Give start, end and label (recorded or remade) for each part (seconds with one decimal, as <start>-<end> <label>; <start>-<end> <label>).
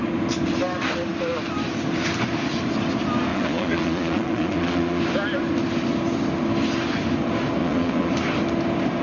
0.0-3.3 recorded; 3.3-5.0 remade; 5.0-7.6 recorded; 7.6-8.1 remade; 8.1-9.0 recorded